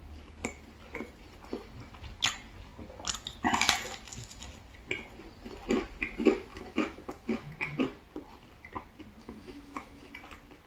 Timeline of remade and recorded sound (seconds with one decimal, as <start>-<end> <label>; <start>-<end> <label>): 0.0-6.5 recorded; 6.5-7.5 remade; 7.5-9.2 recorded; 9.2-10.1 remade; 10.1-10.7 recorded